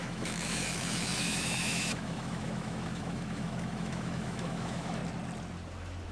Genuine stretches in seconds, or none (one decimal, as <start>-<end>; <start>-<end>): 5.0-6.1